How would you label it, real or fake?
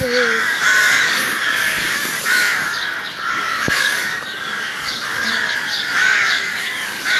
fake